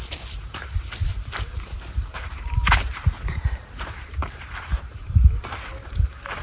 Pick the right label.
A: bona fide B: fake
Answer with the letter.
B